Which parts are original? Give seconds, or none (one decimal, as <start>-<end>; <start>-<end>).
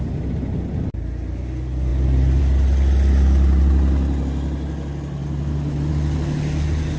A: 0.0-7.0